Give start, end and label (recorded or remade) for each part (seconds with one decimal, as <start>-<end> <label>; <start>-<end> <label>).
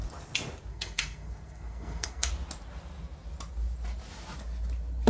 0.0-0.7 recorded; 0.7-2.3 remade; 2.3-5.1 recorded